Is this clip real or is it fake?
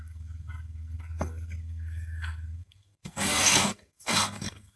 fake